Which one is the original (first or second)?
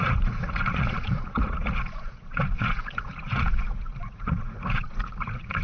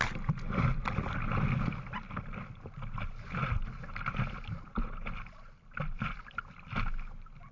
second